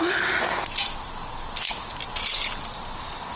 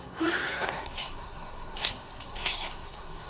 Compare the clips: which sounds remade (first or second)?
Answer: second